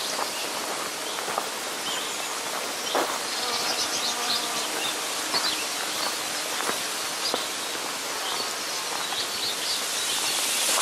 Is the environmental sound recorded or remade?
recorded